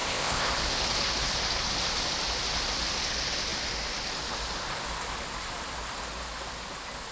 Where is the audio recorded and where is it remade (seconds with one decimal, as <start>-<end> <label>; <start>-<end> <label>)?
0.0-0.5 remade; 0.5-7.1 recorded